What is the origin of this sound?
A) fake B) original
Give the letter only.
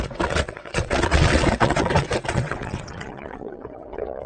A